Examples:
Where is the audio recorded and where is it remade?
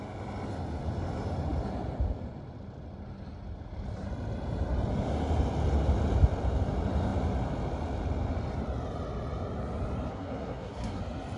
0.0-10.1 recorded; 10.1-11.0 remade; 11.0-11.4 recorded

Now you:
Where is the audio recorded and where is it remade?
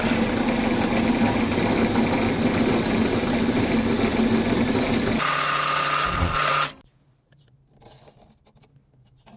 0.0-9.4 recorded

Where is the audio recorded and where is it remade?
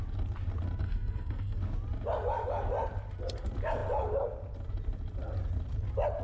0.0-0.8 recorded; 0.8-1.6 remade; 1.6-6.2 recorded